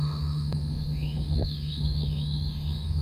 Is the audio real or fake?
fake